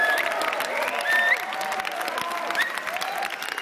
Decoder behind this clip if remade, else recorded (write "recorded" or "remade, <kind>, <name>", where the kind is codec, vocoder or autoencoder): recorded